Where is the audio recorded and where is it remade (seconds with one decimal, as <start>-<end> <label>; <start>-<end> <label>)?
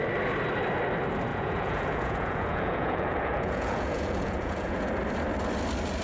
0.0-1.3 recorded; 1.3-4.9 remade; 4.9-6.0 recorded